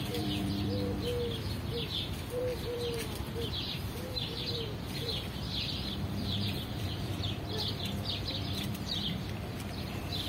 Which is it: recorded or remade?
remade